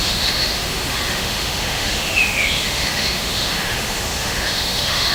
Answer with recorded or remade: remade